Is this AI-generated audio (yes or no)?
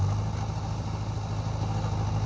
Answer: no